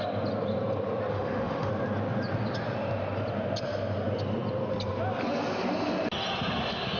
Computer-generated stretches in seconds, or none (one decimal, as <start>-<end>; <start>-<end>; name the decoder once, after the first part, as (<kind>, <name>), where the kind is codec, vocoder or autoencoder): 1.1-1.7 (autoencoder, DAC-VAE)